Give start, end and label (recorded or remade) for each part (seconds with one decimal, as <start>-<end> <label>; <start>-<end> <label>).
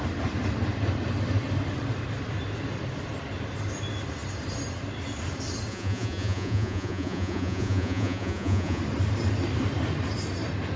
0.0-5.7 recorded; 5.7-8.8 remade; 8.8-10.8 recorded